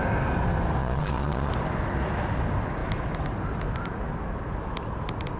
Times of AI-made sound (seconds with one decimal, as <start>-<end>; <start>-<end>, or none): 0.8-1.5